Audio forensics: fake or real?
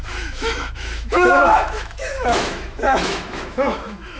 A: fake